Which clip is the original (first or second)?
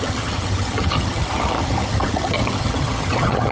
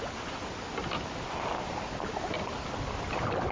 second